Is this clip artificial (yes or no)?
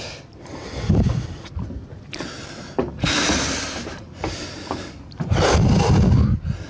no